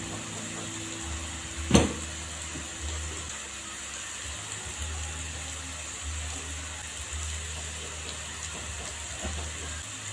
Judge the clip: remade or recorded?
recorded